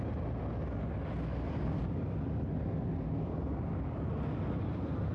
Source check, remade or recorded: recorded